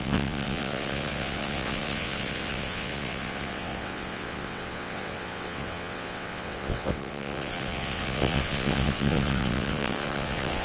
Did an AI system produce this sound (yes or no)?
yes